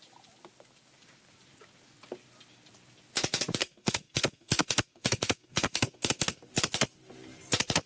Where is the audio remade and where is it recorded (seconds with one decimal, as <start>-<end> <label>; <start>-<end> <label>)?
0.0-3.6 recorded; 3.6-6.4 remade; 6.4-7.9 recorded